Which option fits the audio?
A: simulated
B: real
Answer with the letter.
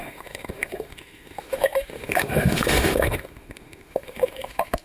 A